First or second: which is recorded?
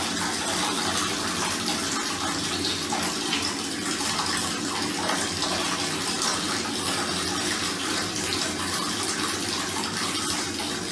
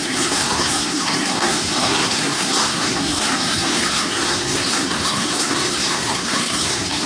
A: first